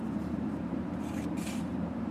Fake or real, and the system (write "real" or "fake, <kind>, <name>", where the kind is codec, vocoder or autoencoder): fake, vocoder, BigVGAN v2